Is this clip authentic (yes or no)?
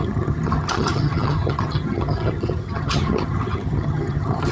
no